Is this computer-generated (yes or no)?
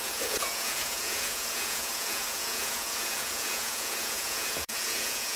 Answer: yes